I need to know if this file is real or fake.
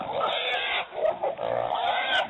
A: real